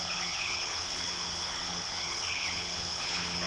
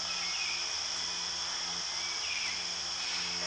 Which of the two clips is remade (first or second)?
first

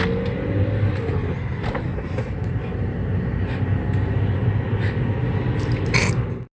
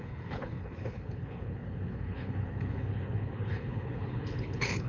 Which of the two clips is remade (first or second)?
second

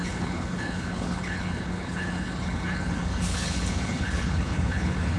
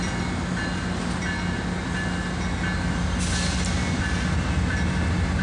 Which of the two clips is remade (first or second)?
first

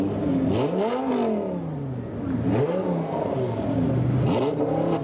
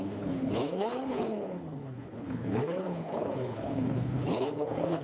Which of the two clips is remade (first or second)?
second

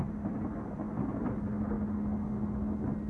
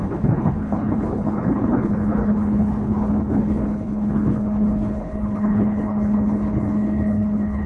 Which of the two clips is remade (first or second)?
second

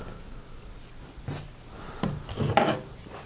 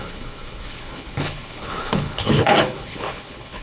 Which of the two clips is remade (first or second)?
second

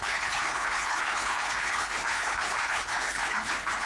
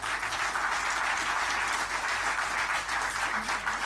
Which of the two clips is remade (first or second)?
first